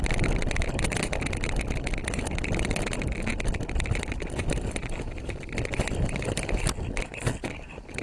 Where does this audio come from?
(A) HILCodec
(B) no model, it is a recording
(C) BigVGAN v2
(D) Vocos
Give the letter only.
B